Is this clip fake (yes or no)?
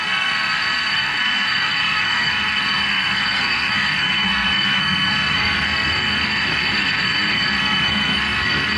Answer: yes